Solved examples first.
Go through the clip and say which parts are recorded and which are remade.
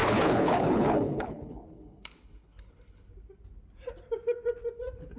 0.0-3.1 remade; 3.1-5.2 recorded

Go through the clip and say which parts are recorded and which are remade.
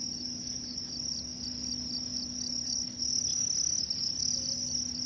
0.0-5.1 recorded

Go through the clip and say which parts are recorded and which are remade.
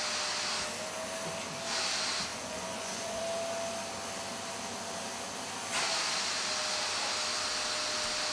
0.0-2.3 recorded; 2.3-3.2 remade; 3.2-8.3 recorded